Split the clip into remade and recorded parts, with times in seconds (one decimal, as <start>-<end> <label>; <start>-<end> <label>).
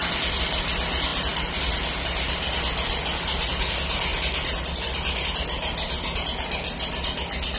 0.0-7.6 recorded